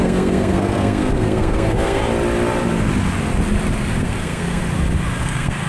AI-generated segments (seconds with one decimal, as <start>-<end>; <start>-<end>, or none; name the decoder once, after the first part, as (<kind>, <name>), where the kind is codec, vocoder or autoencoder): 0.0-2.0 (codec, SNAC); 4.0-4.6; 5.2-5.7